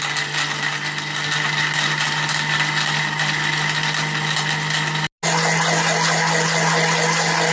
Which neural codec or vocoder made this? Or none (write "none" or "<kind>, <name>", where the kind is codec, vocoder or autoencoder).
none